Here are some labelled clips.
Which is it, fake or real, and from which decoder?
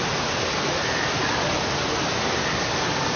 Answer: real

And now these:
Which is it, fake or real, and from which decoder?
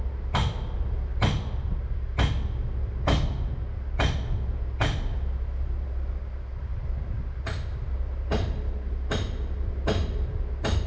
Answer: real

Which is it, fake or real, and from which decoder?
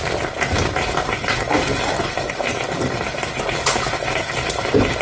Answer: real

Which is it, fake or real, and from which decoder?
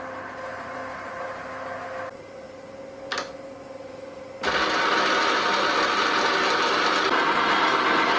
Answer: real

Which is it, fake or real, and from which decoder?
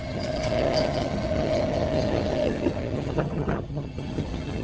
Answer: fake, vocoder, HiFi-GAN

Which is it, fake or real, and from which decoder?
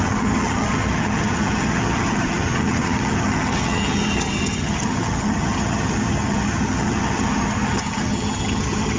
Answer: fake, vocoder, HiFi-GAN